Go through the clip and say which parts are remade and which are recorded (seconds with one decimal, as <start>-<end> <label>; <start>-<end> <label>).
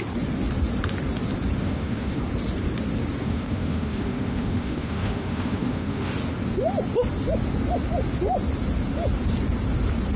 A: 0.0-1.6 recorded; 1.6-2.2 remade; 2.2-3.2 recorded; 3.2-6.1 remade; 6.1-10.2 recorded